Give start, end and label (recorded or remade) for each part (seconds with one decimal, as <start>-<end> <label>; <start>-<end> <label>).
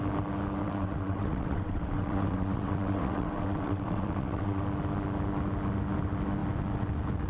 0.0-0.6 recorded; 0.6-4.6 remade; 4.6-7.3 recorded